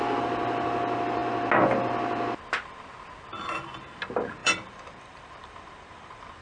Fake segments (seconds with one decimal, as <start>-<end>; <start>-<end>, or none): 4.4-6.4